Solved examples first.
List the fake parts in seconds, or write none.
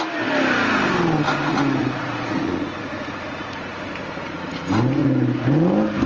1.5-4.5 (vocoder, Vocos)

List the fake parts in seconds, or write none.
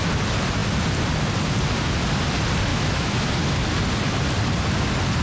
2.7-3.3 (autoencoder, DAC-VAE)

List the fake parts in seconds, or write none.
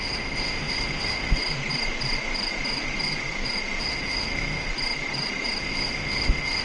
0.0-1.4 (autoencoder, DAC-VAE); 3.8-4.7; 5.6-6.6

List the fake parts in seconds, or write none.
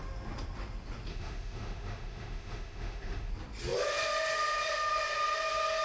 1.1-3.3 (autoencoder, DAC-VAE)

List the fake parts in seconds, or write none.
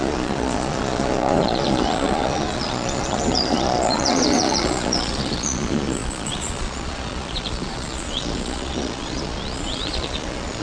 0.0-10.6 (vocoder, Vocos)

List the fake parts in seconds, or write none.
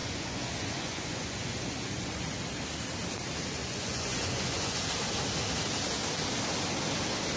0.0-2.3 (vocoder, Vocos); 3.6-4.8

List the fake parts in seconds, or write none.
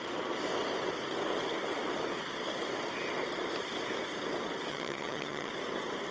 4.7-5.5 (vocoder, HiFi-GAN)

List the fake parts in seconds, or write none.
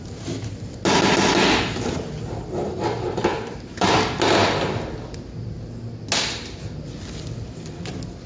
3.3-3.9 (vocoder, BigVGAN v2)